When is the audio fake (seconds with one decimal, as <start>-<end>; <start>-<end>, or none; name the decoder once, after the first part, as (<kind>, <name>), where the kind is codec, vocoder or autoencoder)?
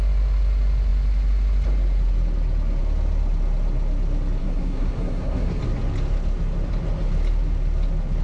4.4-5.6 (codec, SNAC)